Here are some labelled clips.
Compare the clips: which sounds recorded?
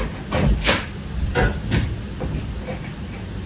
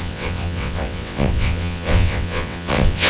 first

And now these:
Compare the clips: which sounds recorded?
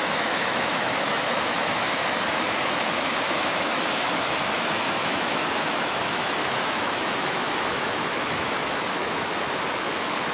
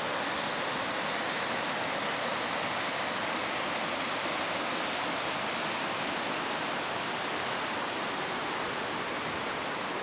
second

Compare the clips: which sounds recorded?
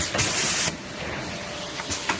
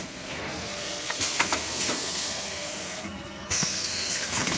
first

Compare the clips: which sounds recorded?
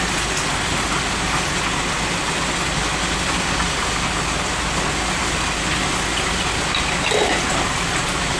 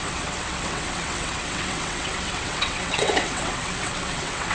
first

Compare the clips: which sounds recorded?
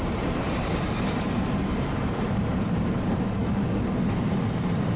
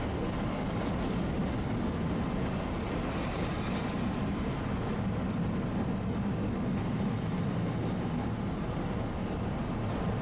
second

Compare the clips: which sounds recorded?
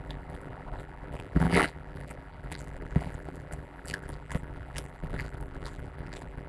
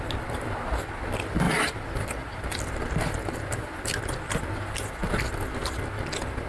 second